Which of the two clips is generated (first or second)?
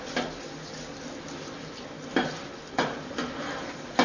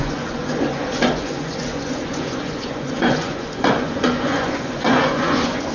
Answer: second